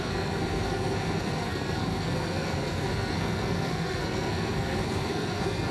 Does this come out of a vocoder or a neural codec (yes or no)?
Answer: yes